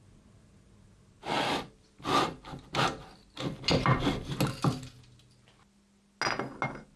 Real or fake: real